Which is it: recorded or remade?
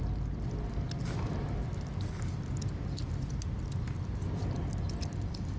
recorded